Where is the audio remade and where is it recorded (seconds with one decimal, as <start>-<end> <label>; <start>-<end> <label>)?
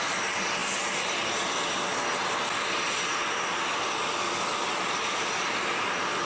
0.0-6.2 recorded